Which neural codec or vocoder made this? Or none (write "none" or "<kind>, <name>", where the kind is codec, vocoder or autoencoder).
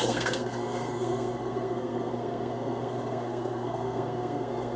codec, SNAC